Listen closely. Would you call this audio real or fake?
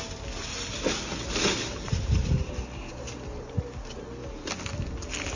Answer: real